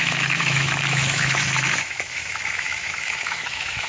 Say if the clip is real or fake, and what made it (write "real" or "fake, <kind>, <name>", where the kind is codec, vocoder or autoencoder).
fake, autoencoder, DAC-VAE